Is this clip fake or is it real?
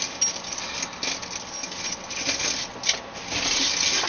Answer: real